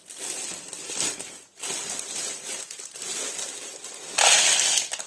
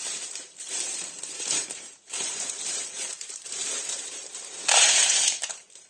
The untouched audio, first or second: first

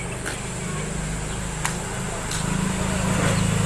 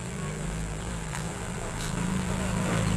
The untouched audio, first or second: first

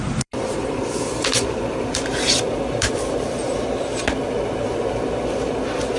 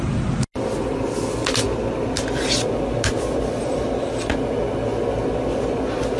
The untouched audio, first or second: second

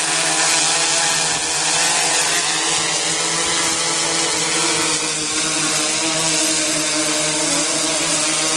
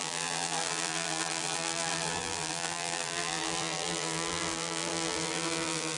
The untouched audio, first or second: first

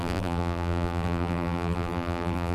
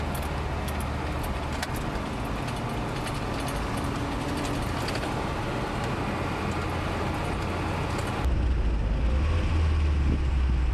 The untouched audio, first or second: second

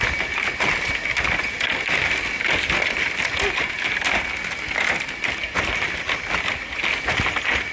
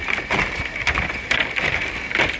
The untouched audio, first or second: first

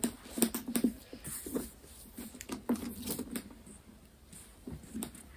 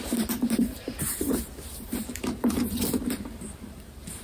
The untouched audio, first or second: first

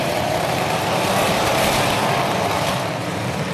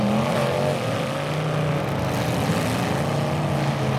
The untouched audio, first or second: second